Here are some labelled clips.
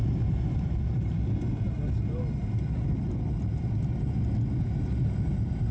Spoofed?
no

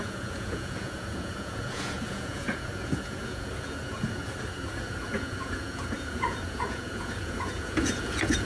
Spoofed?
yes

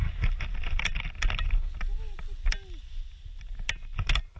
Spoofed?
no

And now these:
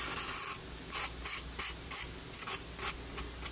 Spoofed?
no